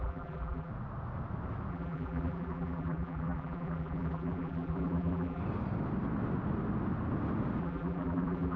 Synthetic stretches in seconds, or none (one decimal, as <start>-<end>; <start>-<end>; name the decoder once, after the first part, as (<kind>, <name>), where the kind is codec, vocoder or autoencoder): 0.0-0.7 (vocoder, BigVGAN v2); 1.7-5.4; 7.6-8.6